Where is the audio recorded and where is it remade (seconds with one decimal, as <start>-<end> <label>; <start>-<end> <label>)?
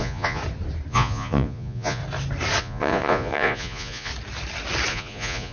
0.0-0.4 remade; 0.4-0.9 recorded; 0.9-2.0 remade; 2.0-2.6 recorded; 2.6-4.1 remade; 4.1-4.9 recorded; 4.9-5.5 remade